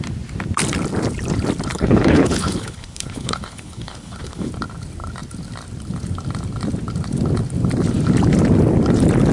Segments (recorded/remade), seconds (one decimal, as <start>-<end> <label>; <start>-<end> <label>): 0.0-1.7 recorded; 1.7-4.5 remade; 4.5-9.3 recorded